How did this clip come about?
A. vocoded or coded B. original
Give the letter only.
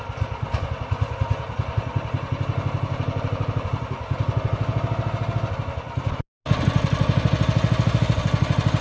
B